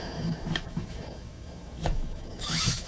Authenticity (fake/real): fake